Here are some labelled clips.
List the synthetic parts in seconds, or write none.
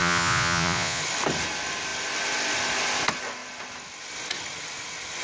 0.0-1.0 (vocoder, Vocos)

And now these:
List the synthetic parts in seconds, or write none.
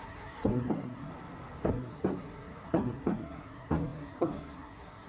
0.0-1.1 (codec, SNAC); 1.7-5.1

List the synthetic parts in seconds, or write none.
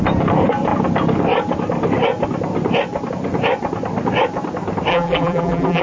4.9-5.8 (vocoder, BigVGAN v2)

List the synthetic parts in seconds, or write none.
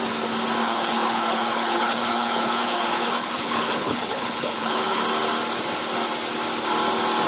0.6-5.0 (codec, HILCodec)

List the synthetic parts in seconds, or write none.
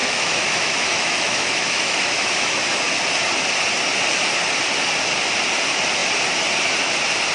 0.0-2.6 (autoencoder, DAC-VAE)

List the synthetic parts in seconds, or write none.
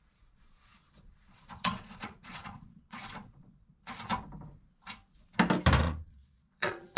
0.0-4.1 (vocoder, Vocos); 5.8-7.0